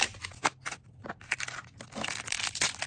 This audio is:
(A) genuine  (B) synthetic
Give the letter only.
A